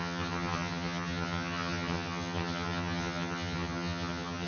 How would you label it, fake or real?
fake